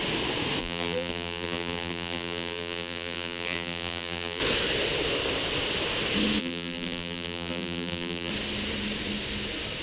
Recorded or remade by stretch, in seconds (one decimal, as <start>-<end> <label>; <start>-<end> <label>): 0.0-0.6 recorded; 0.6-4.4 remade; 4.4-6.4 recorded; 6.4-8.3 remade; 8.3-9.8 recorded